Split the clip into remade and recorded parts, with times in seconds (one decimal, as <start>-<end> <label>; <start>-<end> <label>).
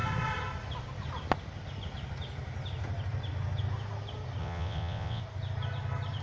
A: 0.0-4.4 recorded; 4.4-5.2 remade; 5.2-6.2 recorded